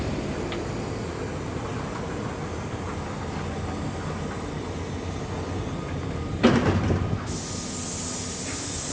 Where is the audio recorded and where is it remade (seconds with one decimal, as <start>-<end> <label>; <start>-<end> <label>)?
0.0-8.9 recorded